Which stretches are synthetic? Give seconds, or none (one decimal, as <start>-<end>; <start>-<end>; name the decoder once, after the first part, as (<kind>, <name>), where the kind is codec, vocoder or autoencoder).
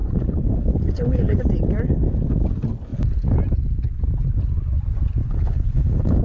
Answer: 0.0-1.4 (codec, HILCodec); 5.2-6.2